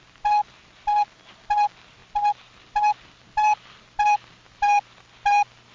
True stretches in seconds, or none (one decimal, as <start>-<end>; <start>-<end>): 0.0-5.7